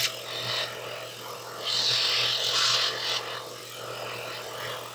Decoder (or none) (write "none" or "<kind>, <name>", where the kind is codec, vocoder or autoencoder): none